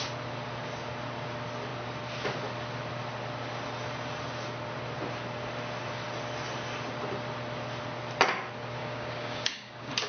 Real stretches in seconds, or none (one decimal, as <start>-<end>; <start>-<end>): 0.0-8.8